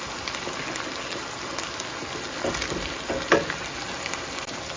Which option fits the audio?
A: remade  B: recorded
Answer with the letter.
B